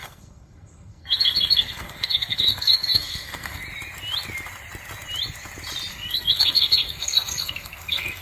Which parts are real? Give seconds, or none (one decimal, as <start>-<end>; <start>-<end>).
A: 3.6-5.9

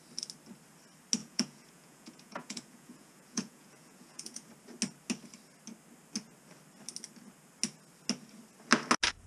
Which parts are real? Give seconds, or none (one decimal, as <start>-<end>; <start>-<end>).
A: 0.0-1.2; 4.5-9.3

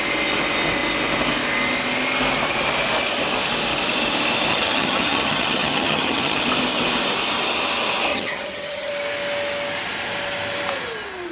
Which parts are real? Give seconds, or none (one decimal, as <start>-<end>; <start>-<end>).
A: 0.0-4.5; 6.4-8.1; 8.9-11.3

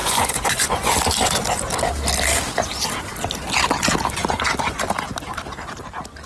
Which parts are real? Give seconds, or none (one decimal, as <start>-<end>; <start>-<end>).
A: 0.9-6.3

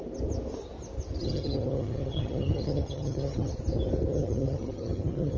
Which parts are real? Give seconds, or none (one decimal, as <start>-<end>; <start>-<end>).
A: 0.0-1.2; 3.5-4.1